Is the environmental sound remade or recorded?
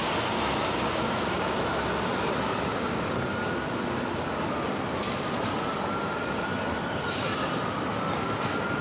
recorded